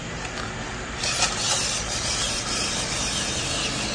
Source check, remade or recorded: recorded